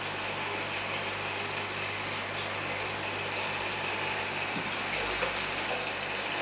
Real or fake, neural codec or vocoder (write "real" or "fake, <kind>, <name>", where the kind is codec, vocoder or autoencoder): real